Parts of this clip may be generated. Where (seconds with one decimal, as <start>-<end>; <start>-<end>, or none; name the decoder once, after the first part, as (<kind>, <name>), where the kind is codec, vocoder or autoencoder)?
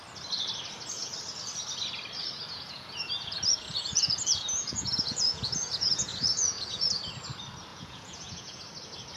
2.5-7.0 (vocoder, Vocos); 7.7-8.6